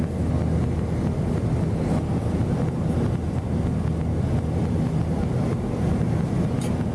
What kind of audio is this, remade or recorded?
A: recorded